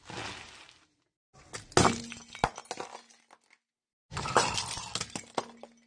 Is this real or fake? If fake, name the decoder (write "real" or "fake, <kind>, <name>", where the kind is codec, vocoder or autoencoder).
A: real